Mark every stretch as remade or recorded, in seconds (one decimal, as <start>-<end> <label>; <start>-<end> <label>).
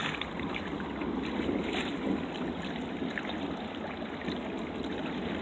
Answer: 0.0-5.4 recorded